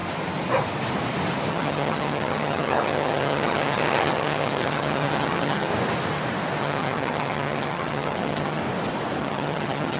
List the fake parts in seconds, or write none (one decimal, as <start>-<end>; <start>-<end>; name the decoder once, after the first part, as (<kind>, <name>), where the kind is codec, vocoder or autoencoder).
1.5-5.7 (vocoder, HiFi-GAN); 6.6-8.6; 9.2-10.0